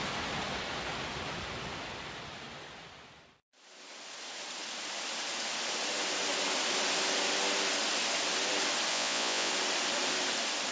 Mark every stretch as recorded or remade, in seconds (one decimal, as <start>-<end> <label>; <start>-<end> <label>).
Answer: 0.0-8.9 recorded; 8.9-9.5 remade; 9.5-10.7 recorded